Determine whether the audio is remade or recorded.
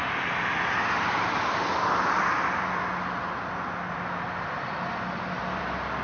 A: recorded